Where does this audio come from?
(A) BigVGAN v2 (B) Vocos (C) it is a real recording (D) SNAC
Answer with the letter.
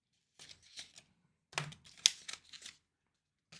C